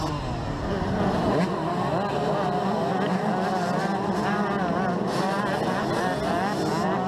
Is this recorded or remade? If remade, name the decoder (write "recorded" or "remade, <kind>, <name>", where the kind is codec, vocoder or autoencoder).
recorded